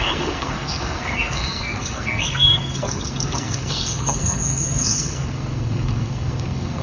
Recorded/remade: remade